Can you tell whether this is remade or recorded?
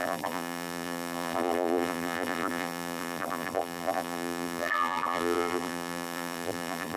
remade